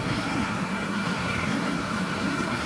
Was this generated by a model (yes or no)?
yes